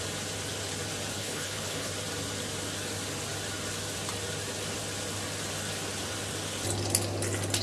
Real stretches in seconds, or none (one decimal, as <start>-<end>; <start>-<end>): 0.0-1.1; 1.9-7.6